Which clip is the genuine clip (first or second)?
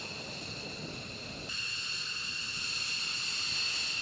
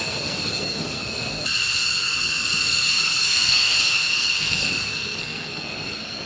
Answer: first